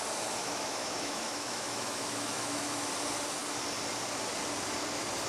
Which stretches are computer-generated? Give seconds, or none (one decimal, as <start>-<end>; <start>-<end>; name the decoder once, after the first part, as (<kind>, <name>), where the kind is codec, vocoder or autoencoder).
0.4-2.9 (autoencoder, DAC-VAE)